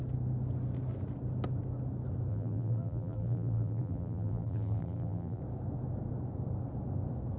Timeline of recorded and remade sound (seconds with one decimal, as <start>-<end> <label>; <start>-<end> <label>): 0.0-2.3 recorded; 2.3-5.4 remade; 5.4-7.4 recorded